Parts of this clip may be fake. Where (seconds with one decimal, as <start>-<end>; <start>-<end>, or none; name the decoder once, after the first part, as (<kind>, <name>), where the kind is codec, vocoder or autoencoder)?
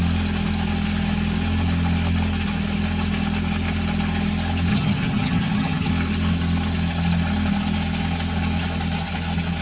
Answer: 4.7-5.9 (vocoder, HiFi-GAN)